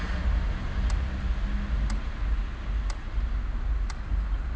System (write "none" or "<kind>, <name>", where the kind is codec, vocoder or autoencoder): none